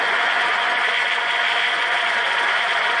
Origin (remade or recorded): remade